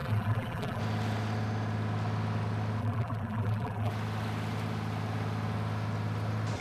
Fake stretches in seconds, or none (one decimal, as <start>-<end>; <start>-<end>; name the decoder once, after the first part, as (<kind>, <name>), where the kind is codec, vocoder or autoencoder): 0.0-0.8 (vocoder, BigVGAN v2); 2.8-3.9